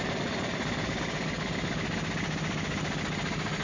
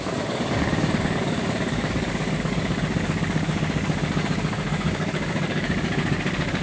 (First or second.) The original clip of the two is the first